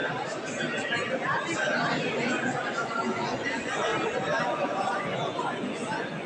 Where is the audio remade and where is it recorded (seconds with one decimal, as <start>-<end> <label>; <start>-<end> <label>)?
0.0-2.1 recorded; 2.1-3.9 remade; 3.9-4.4 recorded; 4.4-6.3 remade